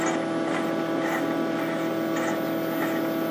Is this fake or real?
real